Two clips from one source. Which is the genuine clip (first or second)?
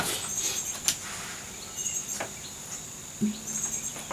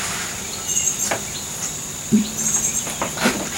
first